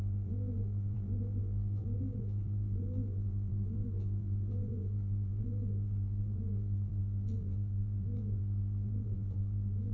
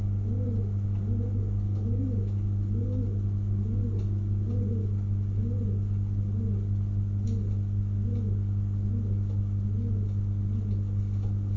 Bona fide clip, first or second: second